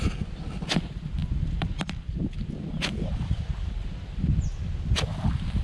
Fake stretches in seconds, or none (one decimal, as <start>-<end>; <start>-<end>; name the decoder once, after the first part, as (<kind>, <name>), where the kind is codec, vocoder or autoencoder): none